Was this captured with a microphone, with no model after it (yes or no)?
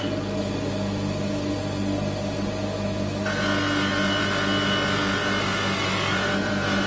yes